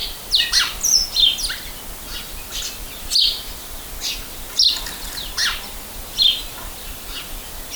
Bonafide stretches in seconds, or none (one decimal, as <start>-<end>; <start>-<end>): 0.0-7.8

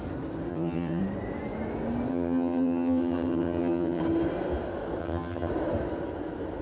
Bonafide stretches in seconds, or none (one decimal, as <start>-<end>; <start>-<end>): 0.0-0.5; 1.0-2.1; 4.0-5.0; 5.5-6.6